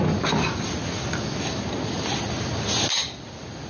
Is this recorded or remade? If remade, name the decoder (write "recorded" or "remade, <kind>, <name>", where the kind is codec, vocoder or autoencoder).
recorded